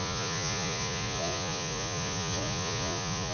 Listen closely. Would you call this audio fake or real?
fake